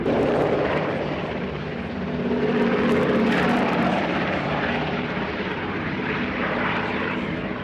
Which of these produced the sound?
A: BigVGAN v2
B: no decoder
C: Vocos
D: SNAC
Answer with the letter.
A